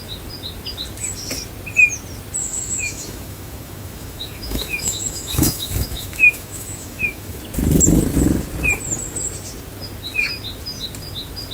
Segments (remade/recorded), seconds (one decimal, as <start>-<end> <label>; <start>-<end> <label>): 0.0-2.4 recorded; 2.4-7.4 remade; 7.4-11.5 recorded